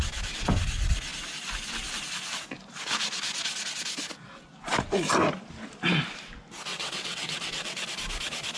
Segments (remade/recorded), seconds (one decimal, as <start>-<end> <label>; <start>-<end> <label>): 0.0-6.7 recorded; 6.7-7.9 remade; 7.9-8.6 recorded